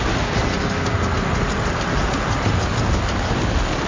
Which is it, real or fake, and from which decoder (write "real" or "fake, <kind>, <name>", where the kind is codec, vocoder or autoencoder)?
real